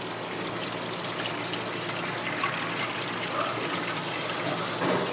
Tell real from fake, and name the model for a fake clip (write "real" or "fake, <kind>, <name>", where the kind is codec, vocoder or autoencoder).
real